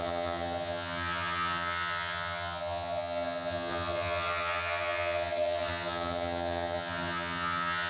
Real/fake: fake